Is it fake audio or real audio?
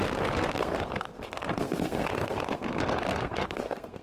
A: fake